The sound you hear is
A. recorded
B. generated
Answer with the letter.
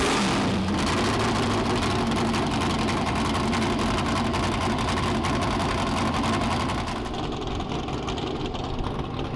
A